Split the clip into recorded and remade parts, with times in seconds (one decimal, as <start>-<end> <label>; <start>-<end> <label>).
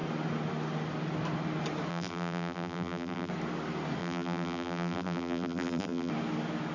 0.0-1.9 recorded; 1.9-3.3 remade; 3.3-4.0 recorded; 4.0-6.1 remade; 6.1-6.7 recorded